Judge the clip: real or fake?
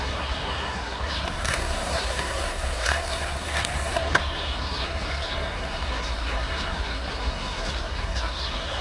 fake